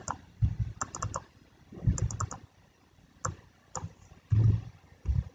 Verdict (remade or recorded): recorded